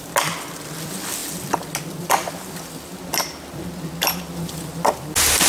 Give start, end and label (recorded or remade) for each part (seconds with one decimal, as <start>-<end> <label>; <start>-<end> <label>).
0.0-5.5 recorded